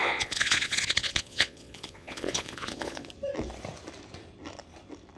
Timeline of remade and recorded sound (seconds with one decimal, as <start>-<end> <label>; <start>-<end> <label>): 0.0-3.1 remade; 3.1-5.2 recorded